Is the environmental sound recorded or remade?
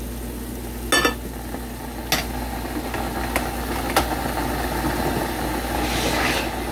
recorded